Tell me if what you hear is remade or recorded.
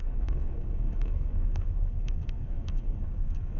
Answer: remade